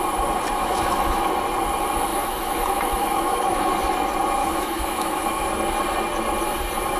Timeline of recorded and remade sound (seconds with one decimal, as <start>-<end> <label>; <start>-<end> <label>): 0.0-0.6 recorded; 0.6-1.3 remade; 1.3-2.1 recorded; 2.1-3.6 remade; 3.6-4.4 recorded; 4.4-5.5 remade; 5.5-7.0 recorded